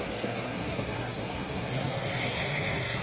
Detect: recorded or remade remade